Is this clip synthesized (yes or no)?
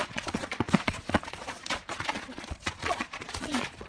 yes